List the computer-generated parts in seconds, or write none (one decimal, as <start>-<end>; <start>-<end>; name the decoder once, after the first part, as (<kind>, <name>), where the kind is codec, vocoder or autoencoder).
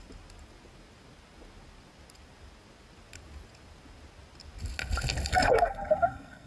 5.3-6.5 (codec, SNAC)